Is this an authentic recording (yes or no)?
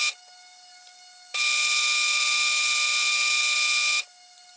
yes